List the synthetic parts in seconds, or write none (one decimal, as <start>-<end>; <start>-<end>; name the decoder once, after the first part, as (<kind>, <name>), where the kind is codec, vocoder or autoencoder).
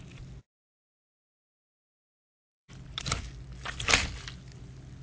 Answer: 0.4-2.7 (vocoder, Vocos)